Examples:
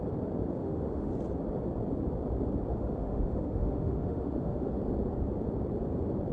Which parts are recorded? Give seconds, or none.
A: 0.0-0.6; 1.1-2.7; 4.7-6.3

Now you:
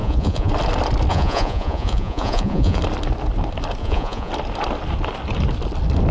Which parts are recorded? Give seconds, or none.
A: 0.5-1.1; 2.8-3.8; 4.3-6.1

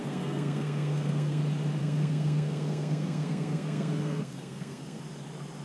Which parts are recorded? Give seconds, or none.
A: 1.4-1.8; 5.0-5.6

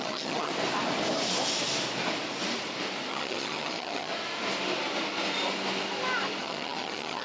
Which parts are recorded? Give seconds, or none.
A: 0.5-3.1; 4.1-6.4